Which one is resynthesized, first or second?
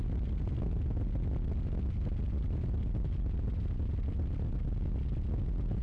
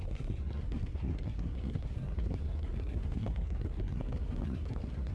second